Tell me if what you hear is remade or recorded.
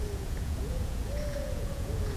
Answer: remade